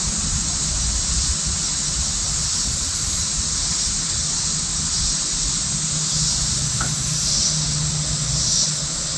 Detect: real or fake real